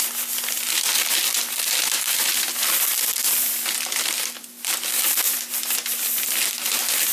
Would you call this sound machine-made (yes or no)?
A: no